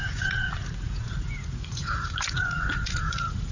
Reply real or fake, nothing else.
fake